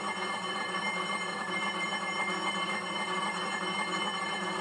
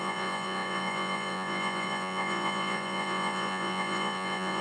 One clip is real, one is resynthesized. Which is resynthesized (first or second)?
second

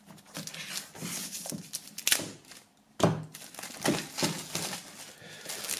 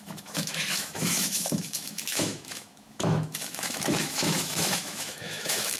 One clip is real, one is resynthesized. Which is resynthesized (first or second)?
second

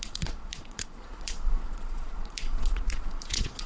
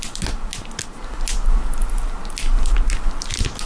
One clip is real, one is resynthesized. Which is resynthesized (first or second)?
first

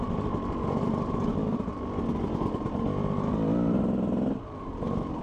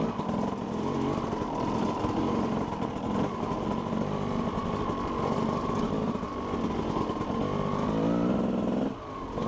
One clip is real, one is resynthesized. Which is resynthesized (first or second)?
first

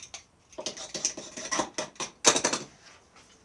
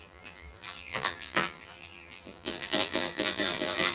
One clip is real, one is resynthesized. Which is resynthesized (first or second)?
second